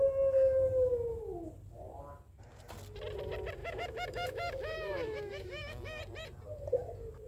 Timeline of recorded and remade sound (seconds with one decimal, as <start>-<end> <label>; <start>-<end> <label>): 0.0-3.6 recorded; 3.6-6.0 remade; 6.0-7.3 recorded